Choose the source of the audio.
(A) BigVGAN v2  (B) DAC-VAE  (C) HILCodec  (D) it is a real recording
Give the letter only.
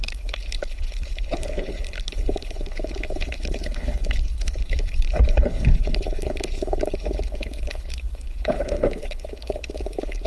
C